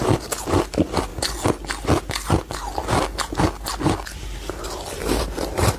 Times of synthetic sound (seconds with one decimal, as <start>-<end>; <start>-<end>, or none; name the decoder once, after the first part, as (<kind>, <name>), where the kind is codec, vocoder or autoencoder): 0.0-1.1 (vocoder, BigVGAN v2); 4.6-5.8